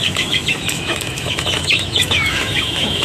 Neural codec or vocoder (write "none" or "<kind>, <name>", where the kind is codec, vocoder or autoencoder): autoencoder, DAC-VAE